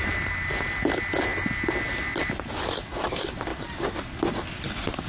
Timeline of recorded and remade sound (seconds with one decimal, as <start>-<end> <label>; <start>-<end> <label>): 0.0-1.3 remade; 1.3-1.9 recorded; 1.9-5.1 remade